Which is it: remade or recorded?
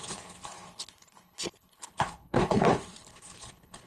remade